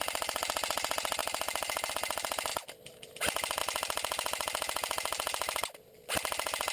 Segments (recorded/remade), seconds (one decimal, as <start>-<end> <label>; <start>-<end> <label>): 0.0-6.7 recorded